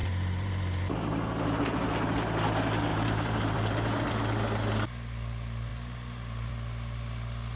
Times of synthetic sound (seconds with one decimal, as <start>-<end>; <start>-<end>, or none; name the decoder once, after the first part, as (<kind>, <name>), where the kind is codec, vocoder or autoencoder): 0.0-1.1 (vocoder, BigVGAN v2); 2.9-4.1